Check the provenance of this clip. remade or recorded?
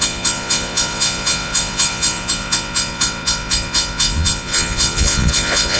remade